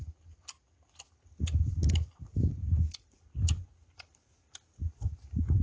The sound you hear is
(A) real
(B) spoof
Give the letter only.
A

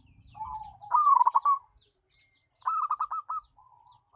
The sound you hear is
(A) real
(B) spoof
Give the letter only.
A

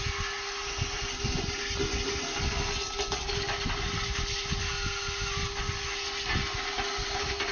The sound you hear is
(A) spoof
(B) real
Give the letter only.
B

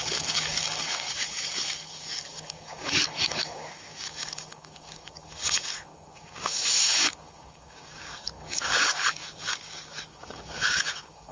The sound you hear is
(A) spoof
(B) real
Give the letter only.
A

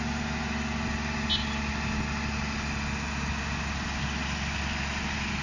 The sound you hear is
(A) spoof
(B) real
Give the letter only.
B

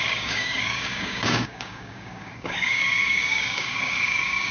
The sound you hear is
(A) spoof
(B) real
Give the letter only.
A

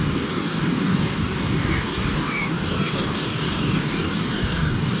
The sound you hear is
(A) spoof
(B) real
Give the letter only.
A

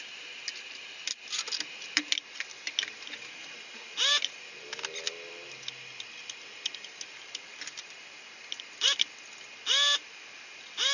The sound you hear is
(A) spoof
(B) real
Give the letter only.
B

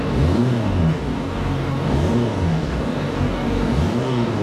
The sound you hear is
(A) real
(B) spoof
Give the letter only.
B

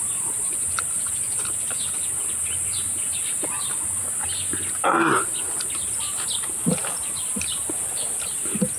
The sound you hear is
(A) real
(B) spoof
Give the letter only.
A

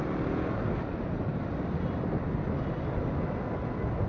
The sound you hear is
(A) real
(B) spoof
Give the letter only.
A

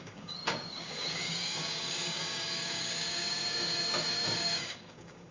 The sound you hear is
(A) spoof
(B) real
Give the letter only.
A